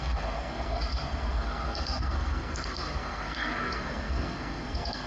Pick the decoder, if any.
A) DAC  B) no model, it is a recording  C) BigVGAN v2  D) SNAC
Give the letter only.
D